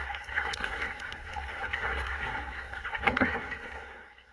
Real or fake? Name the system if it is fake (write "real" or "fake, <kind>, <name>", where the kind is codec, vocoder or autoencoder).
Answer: fake, codec, SNAC